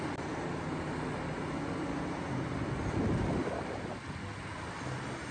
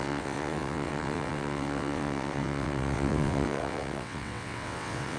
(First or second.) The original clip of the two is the first